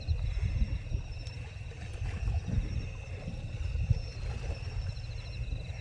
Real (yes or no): yes